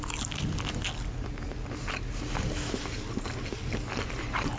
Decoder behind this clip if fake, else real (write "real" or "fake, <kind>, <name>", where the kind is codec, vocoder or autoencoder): real